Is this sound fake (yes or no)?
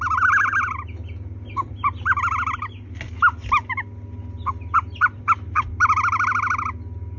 no